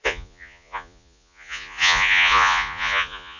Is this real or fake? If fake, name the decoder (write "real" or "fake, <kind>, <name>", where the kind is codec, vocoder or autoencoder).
fake, vocoder, Vocos